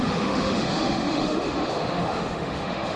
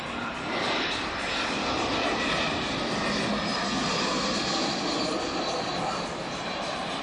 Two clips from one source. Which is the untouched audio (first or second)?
second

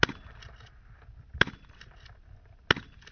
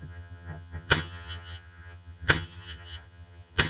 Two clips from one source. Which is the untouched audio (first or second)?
first